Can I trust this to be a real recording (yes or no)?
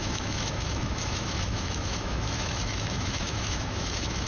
no